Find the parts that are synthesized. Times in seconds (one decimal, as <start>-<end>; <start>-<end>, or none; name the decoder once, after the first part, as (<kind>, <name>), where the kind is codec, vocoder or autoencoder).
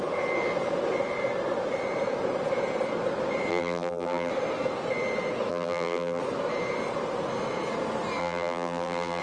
3.5-4.3 (vocoder, BigVGAN v2); 5.5-6.2; 8.2-9.2